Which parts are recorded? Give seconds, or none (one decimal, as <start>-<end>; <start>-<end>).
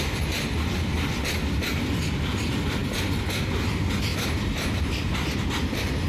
0.0-4.1; 5.1-6.1